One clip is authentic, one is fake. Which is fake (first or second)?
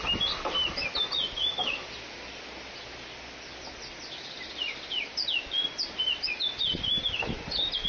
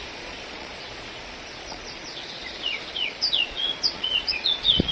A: second